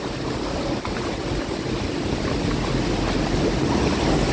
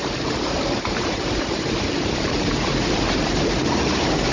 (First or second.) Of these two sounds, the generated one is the second